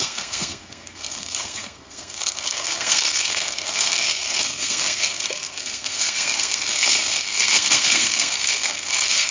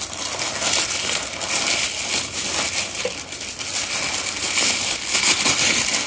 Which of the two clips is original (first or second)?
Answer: second